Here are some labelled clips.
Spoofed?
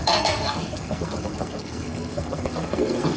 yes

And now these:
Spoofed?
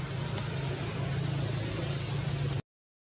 no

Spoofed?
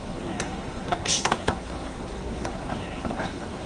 yes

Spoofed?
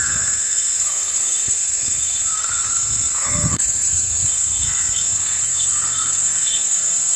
yes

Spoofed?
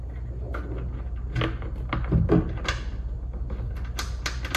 no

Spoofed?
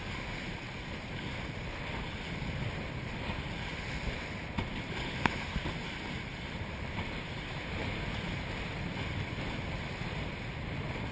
no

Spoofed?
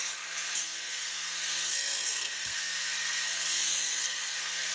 yes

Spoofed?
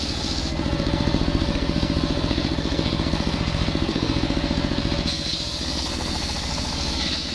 yes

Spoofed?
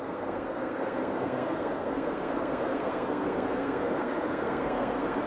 yes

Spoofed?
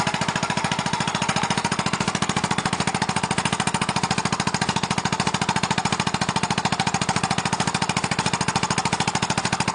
no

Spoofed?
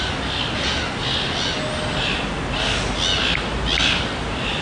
no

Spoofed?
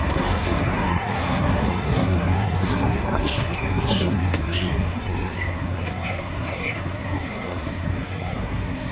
yes